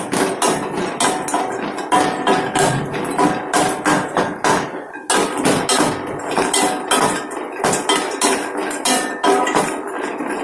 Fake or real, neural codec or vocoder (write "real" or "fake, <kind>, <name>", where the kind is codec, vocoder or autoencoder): real